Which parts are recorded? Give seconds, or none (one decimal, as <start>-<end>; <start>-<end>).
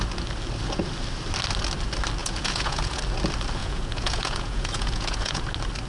0.0-2.2; 3.0-3.6; 5.4-5.9